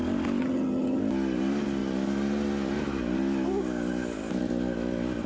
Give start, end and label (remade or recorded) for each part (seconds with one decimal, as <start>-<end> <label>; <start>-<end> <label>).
0.0-0.4 recorded; 0.4-1.0 remade; 1.0-5.3 recorded